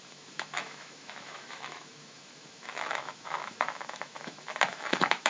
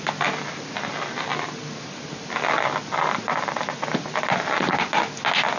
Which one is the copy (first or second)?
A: first